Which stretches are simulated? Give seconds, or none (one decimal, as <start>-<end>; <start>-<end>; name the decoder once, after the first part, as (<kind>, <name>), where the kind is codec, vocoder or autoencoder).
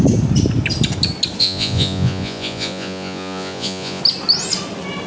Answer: 1.4-4.0 (vocoder, Vocos)